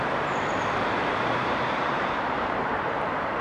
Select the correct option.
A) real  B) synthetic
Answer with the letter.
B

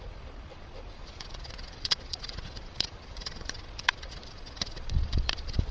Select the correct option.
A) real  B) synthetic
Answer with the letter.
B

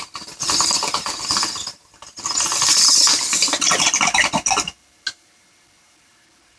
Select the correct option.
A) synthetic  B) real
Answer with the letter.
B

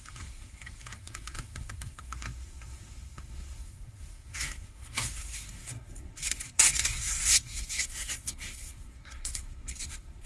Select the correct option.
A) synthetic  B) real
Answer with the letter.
A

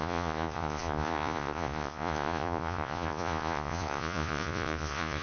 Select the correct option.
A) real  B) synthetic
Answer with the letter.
B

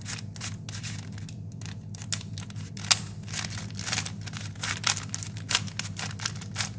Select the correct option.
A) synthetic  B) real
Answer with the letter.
B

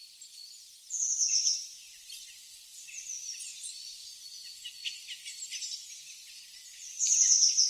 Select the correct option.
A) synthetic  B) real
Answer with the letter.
B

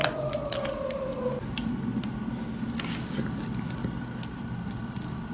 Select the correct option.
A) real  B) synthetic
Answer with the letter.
A